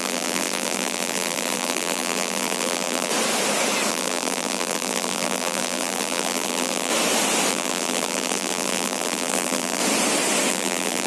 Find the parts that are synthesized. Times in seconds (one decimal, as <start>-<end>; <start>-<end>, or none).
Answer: 0.0-3.1; 3.9-6.9; 7.5-9.8; 10.5-11.1